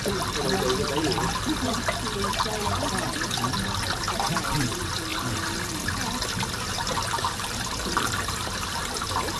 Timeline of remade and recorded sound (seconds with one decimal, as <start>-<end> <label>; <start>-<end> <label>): 0.0-9.4 recorded